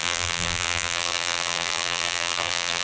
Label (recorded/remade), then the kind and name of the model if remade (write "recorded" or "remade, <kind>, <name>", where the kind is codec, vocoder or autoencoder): remade, vocoder, BigVGAN v2